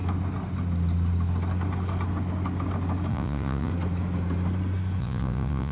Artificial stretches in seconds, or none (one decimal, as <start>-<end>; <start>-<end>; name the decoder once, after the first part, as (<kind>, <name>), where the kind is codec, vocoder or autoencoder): 3.1-3.7 (vocoder, Vocos); 5.0-5.7